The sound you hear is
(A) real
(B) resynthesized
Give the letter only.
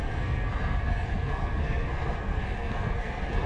B